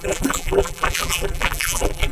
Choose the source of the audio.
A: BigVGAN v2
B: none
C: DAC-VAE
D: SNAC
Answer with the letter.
A